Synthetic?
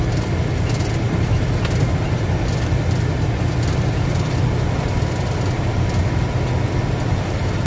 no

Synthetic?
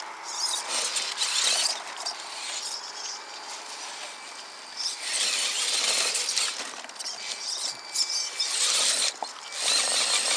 no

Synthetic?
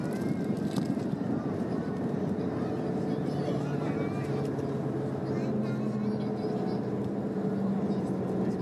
no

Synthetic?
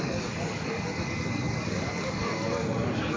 yes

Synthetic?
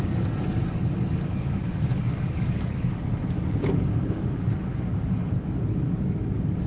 yes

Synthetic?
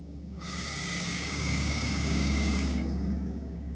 yes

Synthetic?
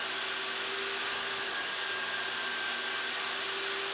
no